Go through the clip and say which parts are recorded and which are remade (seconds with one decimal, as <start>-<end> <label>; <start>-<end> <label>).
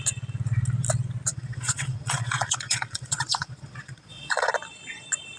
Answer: 0.0-1.3 recorded; 1.3-4.5 remade; 4.5-5.4 recorded